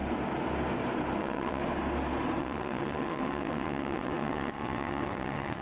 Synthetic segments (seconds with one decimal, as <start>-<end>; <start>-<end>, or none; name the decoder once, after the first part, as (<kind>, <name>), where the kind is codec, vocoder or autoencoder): 1.2-1.6 (vocoder, WaveNeXt); 2.4-5.6